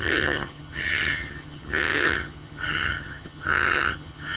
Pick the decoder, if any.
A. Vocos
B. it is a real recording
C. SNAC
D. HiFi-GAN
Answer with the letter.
D